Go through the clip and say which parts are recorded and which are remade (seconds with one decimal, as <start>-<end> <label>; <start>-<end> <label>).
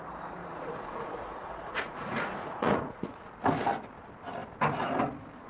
0.0-0.4 recorded; 0.4-3.3 remade; 3.3-5.5 recorded